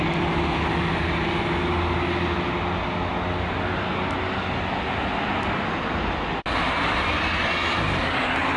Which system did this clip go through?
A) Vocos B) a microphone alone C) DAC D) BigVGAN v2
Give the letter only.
B